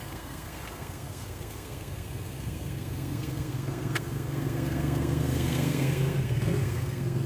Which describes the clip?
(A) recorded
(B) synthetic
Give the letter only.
B